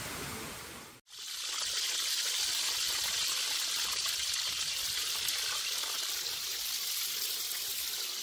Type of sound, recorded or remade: remade